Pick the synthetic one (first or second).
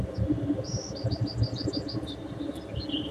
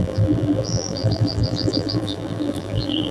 second